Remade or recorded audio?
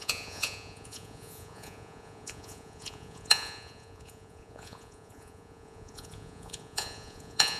remade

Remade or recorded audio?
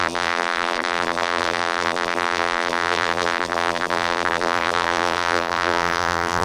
remade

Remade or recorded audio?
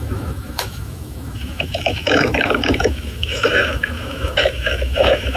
remade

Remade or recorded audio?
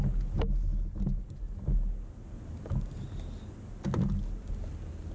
recorded